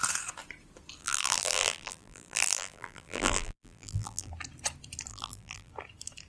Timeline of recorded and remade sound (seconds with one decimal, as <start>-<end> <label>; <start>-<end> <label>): 0.0-1.0 recorded; 1.0-4.3 remade; 4.3-5.1 recorded; 5.1-5.7 remade; 5.7-6.3 recorded